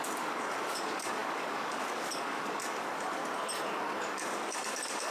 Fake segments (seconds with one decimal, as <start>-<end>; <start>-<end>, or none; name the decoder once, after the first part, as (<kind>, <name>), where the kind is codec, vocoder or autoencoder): 0.0-3.2 (codec, DAC); 3.8-5.1